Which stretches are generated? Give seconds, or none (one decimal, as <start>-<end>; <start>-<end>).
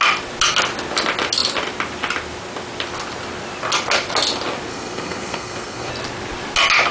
4.7-5.9